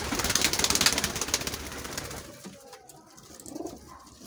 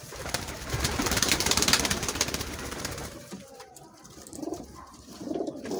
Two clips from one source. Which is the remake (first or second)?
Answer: second